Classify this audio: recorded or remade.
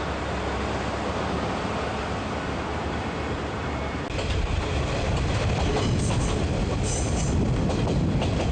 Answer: recorded